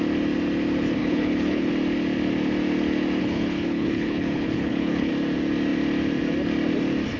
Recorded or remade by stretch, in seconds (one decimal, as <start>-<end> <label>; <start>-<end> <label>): 0.0-1.0 recorded; 1.0-1.7 remade; 1.7-3.2 recorded; 3.2-5.1 remade; 5.1-7.2 recorded